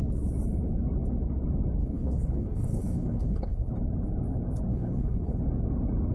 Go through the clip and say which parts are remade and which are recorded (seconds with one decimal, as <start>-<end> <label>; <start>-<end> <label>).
0.0-1.8 recorded; 1.8-3.7 remade; 3.7-4.7 recorded; 4.7-5.4 remade; 5.4-6.1 recorded

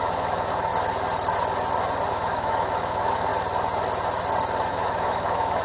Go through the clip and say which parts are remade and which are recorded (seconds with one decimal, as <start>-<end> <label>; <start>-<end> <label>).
0.0-0.7 remade; 0.7-2.1 recorded; 2.1-3.3 remade; 3.3-4.7 recorded; 4.7-5.6 remade

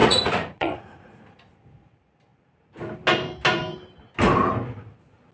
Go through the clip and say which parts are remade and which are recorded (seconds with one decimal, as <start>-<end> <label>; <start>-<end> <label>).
0.0-1.2 remade; 1.2-5.3 recorded

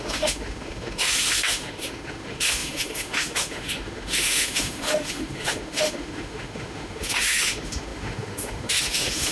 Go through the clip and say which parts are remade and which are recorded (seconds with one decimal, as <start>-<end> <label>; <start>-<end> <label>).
0.0-9.3 remade